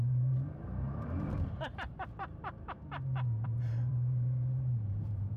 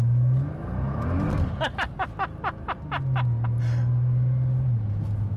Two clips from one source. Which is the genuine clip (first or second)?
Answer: second